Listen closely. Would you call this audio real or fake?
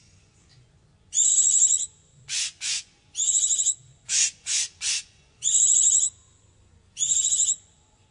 fake